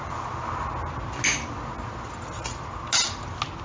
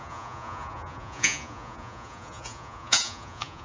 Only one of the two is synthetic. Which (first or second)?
second